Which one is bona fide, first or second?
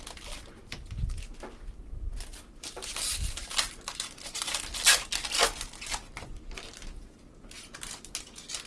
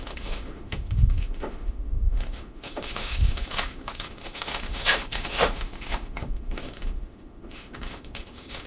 first